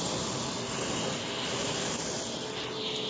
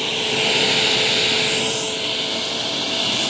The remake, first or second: second